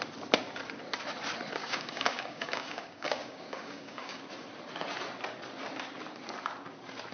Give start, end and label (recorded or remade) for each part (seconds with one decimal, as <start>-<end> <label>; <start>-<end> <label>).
0.0-1.6 recorded; 1.6-4.2 remade; 4.2-7.1 recorded